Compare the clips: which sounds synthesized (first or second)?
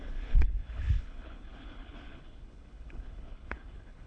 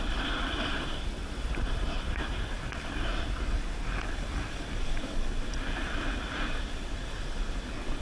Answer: first